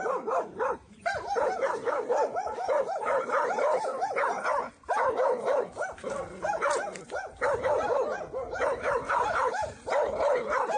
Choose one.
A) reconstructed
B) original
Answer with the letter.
A